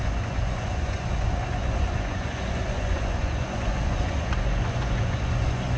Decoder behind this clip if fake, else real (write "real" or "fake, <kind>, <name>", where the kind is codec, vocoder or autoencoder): fake, vocoder, Vocos